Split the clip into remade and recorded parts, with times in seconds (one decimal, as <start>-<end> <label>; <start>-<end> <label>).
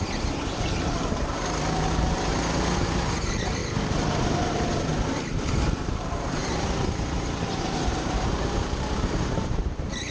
0.0-3.6 remade; 3.6-4.5 recorded; 4.5-4.9 remade; 4.9-5.5 recorded; 5.5-10.1 remade